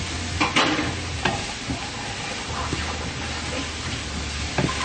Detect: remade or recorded recorded